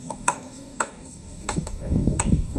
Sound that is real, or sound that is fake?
fake